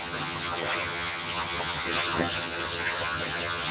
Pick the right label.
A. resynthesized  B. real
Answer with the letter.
A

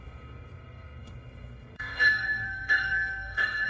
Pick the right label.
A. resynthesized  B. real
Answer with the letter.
A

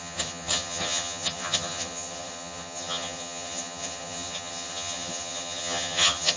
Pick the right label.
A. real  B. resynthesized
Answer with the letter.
B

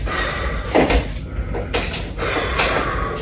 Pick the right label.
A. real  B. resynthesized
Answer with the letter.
A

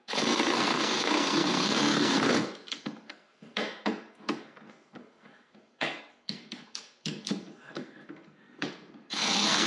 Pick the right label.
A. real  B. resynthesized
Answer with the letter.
B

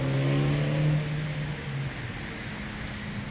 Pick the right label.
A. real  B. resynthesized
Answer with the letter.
A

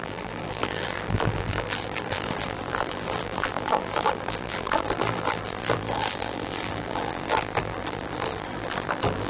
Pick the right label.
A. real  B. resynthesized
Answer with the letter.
B